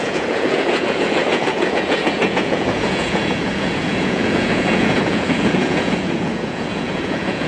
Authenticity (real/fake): fake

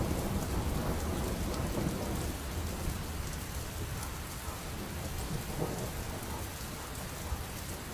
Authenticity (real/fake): real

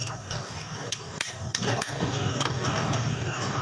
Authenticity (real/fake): fake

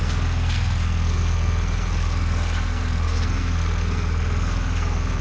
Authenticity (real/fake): fake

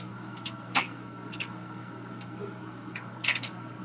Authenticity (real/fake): fake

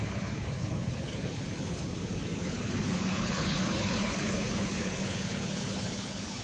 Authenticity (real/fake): fake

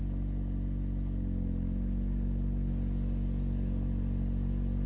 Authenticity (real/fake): real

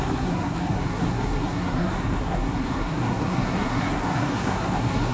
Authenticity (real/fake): fake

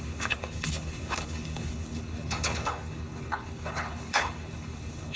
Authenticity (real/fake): fake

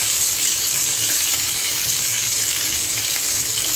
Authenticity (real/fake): fake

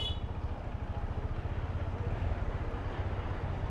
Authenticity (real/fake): real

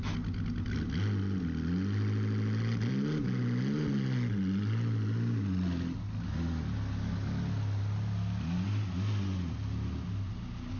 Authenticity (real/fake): real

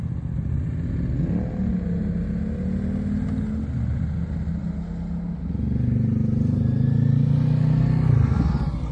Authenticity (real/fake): real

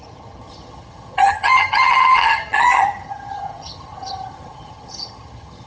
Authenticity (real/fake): fake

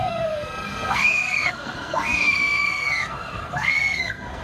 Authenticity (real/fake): fake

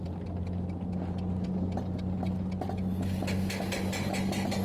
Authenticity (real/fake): real